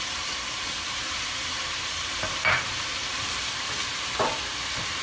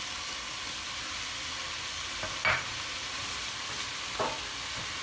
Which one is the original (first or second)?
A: second